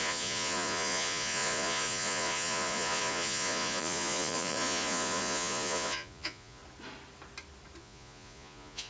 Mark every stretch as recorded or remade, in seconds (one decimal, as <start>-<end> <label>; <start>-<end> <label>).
0.0-6.6 remade; 6.6-7.8 recorded; 7.8-8.9 remade